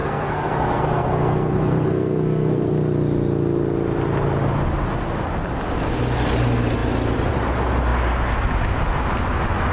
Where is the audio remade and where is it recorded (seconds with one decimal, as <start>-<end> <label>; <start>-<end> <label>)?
0.0-2.7 remade; 2.7-9.7 recorded